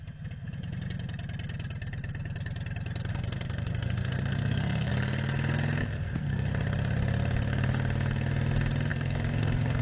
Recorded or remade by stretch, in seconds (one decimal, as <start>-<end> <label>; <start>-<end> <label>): 0.0-3.1 recorded; 3.1-4.9 remade; 4.9-5.8 recorded; 5.8-6.5 remade; 6.5-8.9 recorded; 8.9-9.8 remade